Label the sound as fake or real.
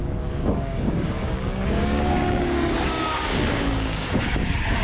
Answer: fake